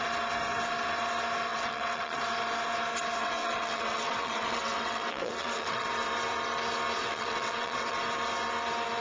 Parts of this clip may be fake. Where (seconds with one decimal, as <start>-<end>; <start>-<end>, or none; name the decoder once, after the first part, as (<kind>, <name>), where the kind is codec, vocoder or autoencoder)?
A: 1.5-2.2 (vocoder, WaveNeXt); 3.2-5.9; 7.0-8.0